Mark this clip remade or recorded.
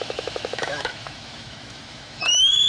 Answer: remade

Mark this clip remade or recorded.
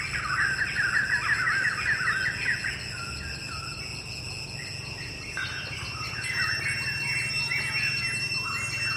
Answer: recorded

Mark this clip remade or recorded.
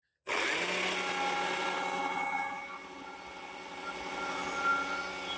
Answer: recorded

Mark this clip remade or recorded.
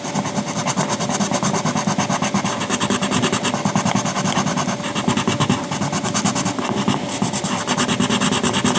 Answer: recorded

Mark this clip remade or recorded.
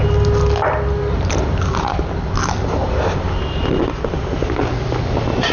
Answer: recorded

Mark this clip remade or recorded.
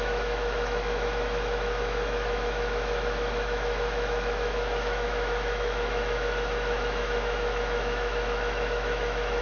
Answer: remade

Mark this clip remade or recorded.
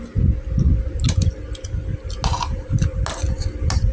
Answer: recorded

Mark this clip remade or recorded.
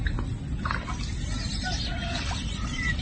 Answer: recorded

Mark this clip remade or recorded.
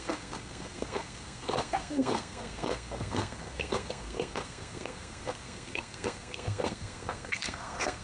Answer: remade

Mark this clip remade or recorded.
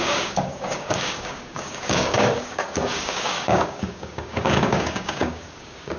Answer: remade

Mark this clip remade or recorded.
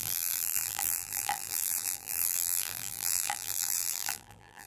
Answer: remade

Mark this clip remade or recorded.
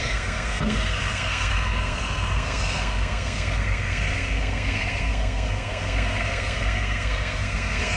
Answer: remade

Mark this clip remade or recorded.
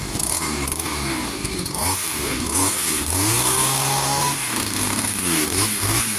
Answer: remade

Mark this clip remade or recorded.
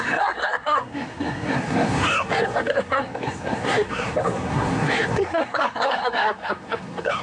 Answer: remade